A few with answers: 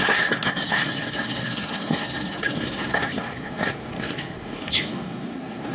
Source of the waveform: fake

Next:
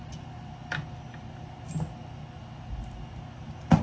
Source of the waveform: real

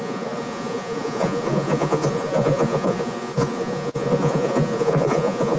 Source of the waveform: fake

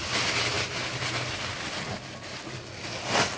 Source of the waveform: real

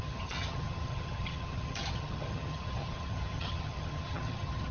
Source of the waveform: fake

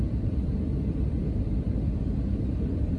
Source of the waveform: fake